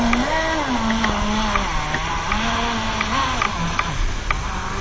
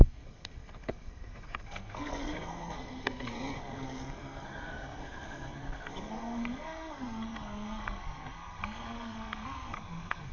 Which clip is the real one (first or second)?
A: first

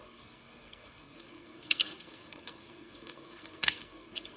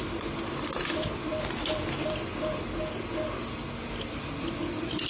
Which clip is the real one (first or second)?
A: second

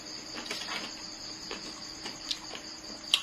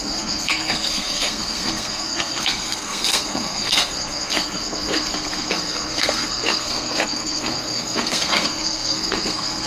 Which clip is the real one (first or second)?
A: first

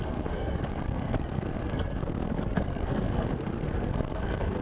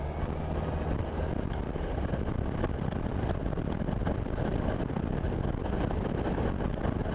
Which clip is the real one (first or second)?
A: second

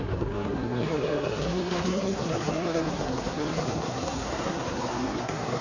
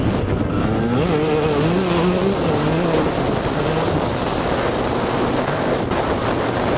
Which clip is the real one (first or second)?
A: second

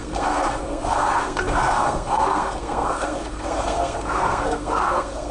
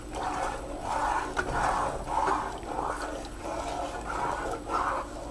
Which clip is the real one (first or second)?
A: second